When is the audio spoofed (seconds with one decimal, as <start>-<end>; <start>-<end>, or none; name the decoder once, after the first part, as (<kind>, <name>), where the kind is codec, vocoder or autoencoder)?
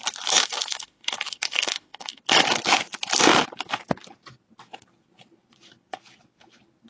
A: 0.4-2.2 (autoencoder, DAC-VAE)